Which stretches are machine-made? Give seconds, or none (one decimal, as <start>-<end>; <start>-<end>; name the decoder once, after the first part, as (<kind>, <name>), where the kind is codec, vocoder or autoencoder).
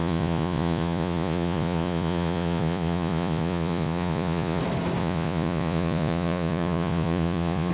0.0-4.6 (vocoder, Vocos); 5.0-7.7